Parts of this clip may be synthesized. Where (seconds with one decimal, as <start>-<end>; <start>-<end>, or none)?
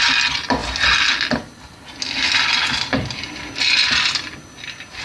none